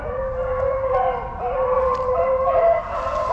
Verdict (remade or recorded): recorded